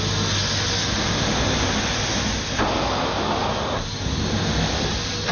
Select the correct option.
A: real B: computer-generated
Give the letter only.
A